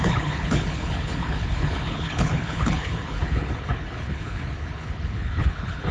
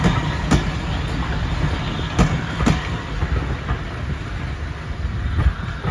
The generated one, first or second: first